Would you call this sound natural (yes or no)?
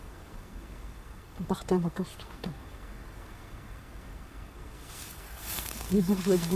no